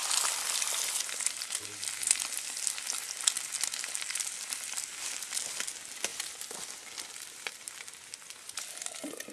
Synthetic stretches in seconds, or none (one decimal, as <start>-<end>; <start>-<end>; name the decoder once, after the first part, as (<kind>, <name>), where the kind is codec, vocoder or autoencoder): none